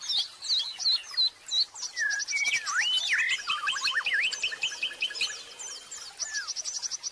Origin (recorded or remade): recorded